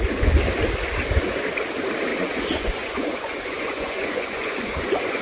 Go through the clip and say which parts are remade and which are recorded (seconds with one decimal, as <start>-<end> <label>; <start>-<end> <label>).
0.0-2.1 recorded; 2.1-5.2 remade